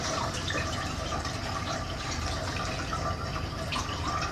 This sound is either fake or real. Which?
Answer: fake